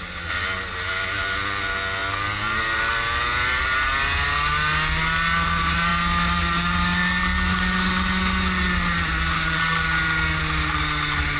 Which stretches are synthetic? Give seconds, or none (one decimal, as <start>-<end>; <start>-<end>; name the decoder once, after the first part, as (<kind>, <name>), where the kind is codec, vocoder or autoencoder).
none